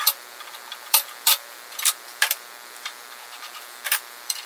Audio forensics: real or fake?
fake